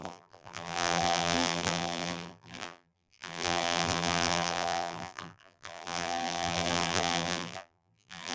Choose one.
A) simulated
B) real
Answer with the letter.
A